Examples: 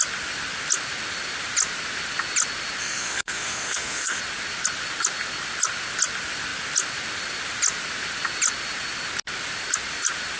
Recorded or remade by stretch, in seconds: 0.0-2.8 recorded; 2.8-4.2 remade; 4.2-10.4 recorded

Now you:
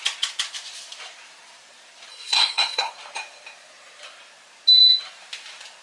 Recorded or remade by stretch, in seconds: 0.0-2.1 recorded; 2.1-2.9 remade; 2.9-5.8 recorded

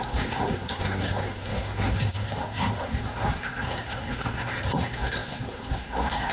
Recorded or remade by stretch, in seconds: 0.0-6.3 remade

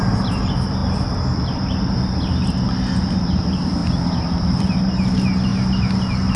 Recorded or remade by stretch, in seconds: 0.0-6.4 recorded

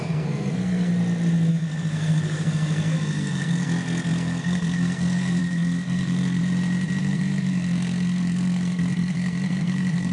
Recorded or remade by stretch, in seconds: 0.0-0.9 remade; 0.9-1.5 recorded; 1.5-6.4 remade; 6.4-7.0 recorded; 7.0-10.1 remade

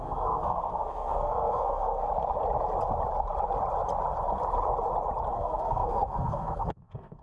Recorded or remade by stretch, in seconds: 0.0-2.1 remade; 2.1-5.3 recorded; 5.3-7.2 remade